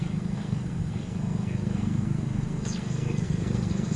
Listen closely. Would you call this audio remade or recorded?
remade